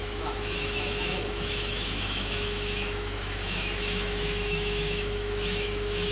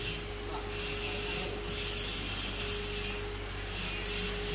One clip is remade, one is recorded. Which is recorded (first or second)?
second